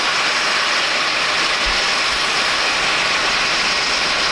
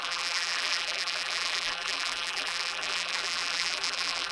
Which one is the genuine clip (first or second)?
first